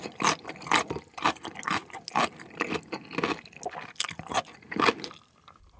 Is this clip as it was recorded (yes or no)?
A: yes